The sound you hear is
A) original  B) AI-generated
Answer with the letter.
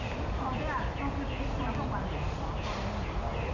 A